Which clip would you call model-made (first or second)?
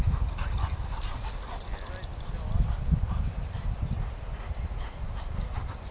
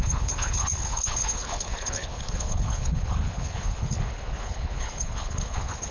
second